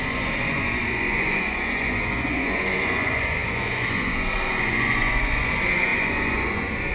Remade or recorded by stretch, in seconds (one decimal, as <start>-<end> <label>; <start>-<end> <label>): 0.0-6.9 remade